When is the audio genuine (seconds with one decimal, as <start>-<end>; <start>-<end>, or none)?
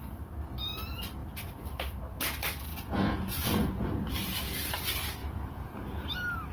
0.0-2.7; 3.9-5.2; 6.1-6.5